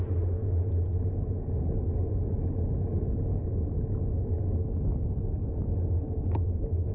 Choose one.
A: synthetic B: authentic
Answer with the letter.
B